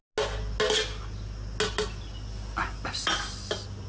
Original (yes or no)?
yes